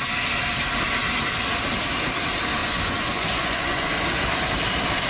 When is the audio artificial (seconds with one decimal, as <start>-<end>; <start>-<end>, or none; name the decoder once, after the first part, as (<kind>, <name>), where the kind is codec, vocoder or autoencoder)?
2.6-3.9 (vocoder, Vocos)